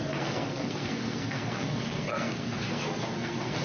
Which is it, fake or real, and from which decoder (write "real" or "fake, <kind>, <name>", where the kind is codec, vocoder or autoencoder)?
fake, codec, SNAC